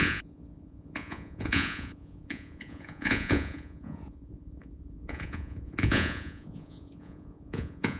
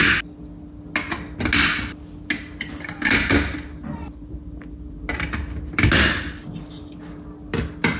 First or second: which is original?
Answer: second